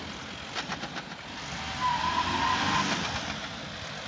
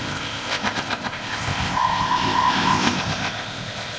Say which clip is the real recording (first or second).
first